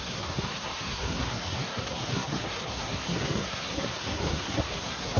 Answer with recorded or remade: remade